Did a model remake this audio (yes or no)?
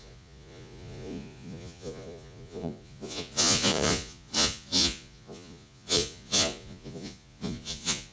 yes